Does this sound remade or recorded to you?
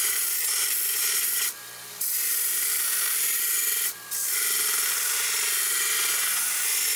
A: recorded